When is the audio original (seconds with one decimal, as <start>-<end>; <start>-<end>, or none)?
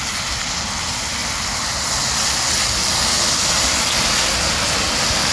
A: 0.0-5.3